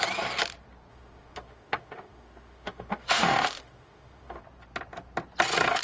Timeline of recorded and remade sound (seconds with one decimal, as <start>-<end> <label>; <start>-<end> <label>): 0.0-0.9 recorded; 0.9-4.4 remade; 4.4-5.8 recorded